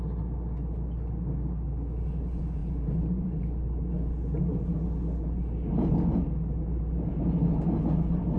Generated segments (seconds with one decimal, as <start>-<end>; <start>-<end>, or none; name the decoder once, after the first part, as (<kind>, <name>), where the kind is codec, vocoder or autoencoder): 2.6-3.4 (vocoder, BigVGAN v2)

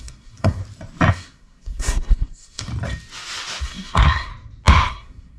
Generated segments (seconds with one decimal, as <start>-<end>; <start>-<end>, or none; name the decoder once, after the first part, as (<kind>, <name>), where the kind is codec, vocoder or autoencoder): 0.0-0.6 (codec, SNAC); 1.1-2.7; 3.6-4.3; 4.9-5.4

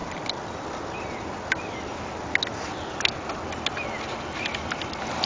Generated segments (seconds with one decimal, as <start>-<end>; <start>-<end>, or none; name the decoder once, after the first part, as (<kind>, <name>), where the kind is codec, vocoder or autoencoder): none

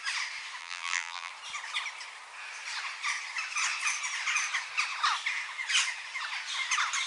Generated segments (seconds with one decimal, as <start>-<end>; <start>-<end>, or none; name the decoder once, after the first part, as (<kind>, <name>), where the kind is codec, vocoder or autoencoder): 0.6-1.3 (vocoder, BigVGAN v2)

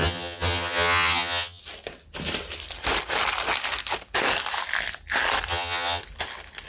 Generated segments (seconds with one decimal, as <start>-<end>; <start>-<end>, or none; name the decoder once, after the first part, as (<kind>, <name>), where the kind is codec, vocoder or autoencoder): 0.0-1.6 (vocoder, HiFi-GAN); 5.5-6.0